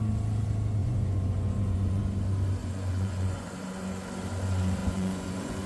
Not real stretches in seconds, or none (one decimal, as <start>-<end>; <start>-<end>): 0.8-2.0; 2.6-3.5; 4.8-5.7